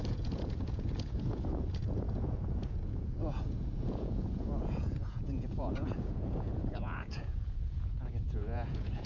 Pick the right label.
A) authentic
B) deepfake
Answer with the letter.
B